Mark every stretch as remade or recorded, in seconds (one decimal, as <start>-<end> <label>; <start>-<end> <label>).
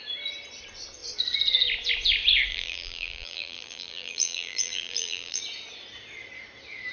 0.0-2.5 recorded; 2.5-5.4 remade; 5.4-6.9 recorded